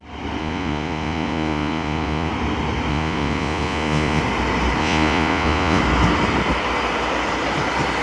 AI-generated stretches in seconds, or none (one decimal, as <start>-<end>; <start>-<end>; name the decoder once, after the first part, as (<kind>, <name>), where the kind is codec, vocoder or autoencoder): 0.4-2.3 (vocoder, Vocos); 2.9-4.2; 4.8-5.8